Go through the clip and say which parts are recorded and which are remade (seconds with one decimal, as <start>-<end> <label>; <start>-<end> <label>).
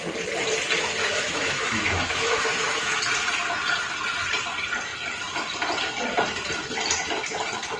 0.0-1.0 recorded; 1.0-3.0 remade; 3.0-7.8 recorded